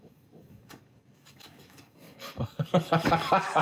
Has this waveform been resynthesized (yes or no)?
yes